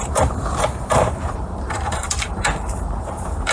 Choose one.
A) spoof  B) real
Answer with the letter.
A